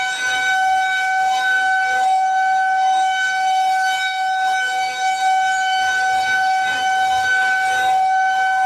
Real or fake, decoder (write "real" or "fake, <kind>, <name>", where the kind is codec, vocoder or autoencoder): fake, codec, DAC